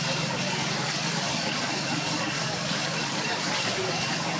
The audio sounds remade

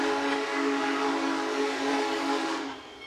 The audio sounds remade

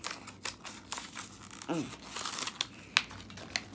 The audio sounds recorded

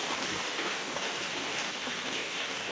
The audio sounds remade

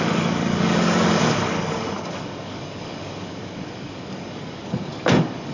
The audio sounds remade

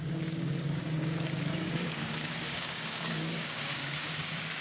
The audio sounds remade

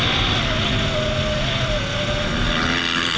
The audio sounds recorded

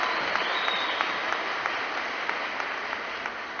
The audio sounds recorded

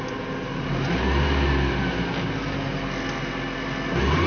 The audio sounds recorded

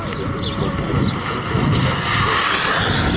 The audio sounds recorded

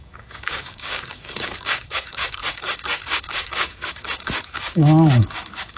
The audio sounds remade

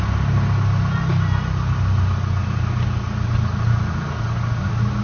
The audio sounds recorded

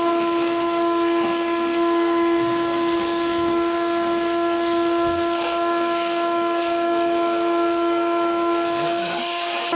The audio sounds remade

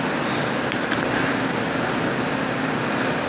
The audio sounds recorded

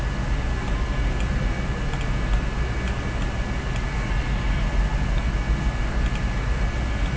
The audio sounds recorded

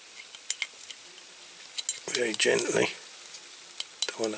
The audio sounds recorded